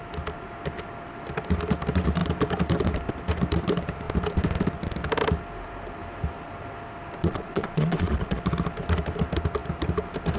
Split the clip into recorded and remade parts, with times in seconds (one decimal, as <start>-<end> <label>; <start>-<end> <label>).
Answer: 0.0-7.2 recorded; 7.2-8.4 remade; 8.4-10.4 recorded